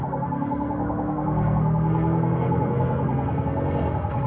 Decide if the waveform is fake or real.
fake